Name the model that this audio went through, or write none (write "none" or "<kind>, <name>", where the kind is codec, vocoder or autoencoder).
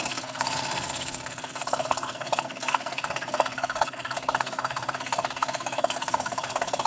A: codec, SNAC